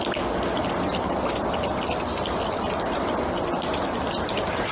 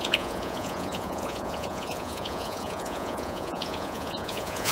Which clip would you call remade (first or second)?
second